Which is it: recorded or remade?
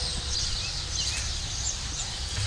recorded